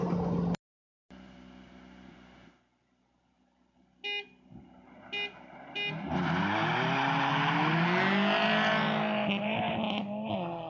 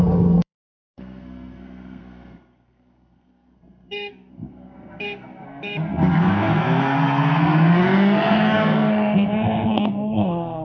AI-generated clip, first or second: second